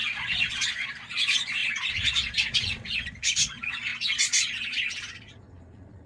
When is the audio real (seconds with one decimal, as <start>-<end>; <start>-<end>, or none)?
none